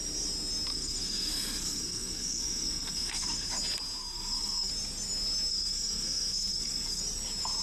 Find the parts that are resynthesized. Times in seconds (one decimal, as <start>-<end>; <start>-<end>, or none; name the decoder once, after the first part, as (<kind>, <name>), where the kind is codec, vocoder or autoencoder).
0.7-3.5 (codec, SNAC); 4.0-4.7; 5.5-7.0